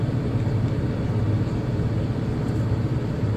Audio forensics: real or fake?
fake